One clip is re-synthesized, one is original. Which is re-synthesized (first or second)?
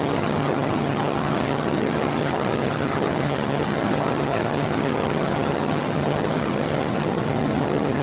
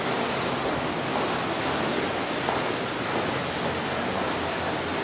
first